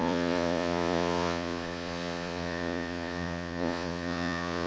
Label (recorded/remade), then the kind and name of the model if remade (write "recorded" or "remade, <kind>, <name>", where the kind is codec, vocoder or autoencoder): remade, vocoder, Vocos